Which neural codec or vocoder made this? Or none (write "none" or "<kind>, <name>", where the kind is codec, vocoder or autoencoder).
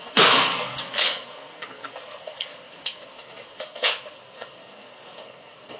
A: codec, SNAC